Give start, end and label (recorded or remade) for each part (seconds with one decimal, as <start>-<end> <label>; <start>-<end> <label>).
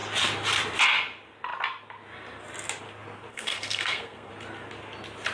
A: 0.0-3.3 recorded; 3.3-4.3 remade; 4.3-5.3 recorded